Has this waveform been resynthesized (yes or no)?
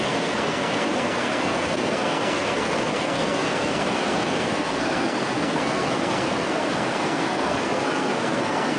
yes